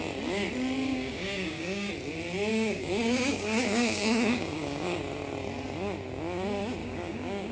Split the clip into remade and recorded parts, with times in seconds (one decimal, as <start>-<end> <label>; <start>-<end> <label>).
0.0-0.8 recorded; 0.8-1.9 remade; 1.9-2.5 recorded; 2.5-5.0 remade; 5.0-6.8 recorded; 6.8-7.5 remade

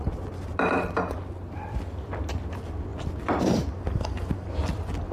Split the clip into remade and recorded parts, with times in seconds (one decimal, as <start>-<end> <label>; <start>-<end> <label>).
0.0-5.1 remade

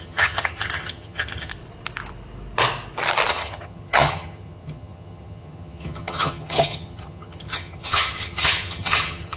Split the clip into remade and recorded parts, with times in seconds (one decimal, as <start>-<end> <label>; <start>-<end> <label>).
0.0-1.5 remade; 1.5-3.3 recorded; 3.3-9.4 remade

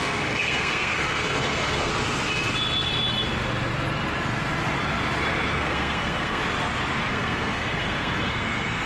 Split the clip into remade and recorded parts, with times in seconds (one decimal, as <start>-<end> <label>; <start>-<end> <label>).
0.0-1.9 remade; 1.9-5.5 recorded; 5.5-6.4 remade; 6.4-7.1 recorded; 7.1-8.9 remade

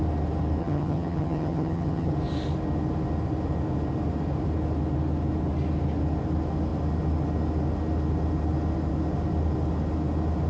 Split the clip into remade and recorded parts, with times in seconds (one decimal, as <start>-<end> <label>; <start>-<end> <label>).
0.0-0.6 recorded; 0.6-2.1 remade; 2.1-10.5 recorded

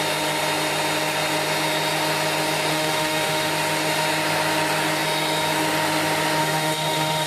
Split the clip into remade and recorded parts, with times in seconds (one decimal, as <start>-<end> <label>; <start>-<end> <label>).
0.0-2.7 recorded; 2.7-3.5 remade; 3.5-6.4 recorded; 6.4-7.3 remade

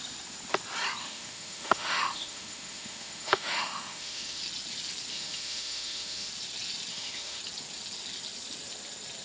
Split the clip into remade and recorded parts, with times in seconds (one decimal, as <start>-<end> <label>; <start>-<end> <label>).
0.0-1.0 recorded; 1.0-4.4 remade; 4.4-5.1 recorded; 5.1-6.3 remade; 6.3-6.9 recorded; 6.9-7.4 remade; 7.4-9.2 recorded

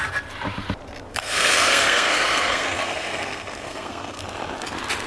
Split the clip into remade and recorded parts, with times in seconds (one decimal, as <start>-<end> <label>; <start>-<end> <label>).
0.0-1.1 recorded; 1.1-4.2 remade; 4.2-5.1 recorded